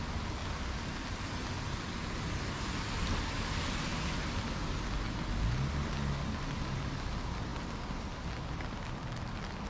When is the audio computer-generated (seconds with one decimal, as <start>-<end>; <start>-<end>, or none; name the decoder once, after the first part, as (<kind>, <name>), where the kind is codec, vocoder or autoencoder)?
none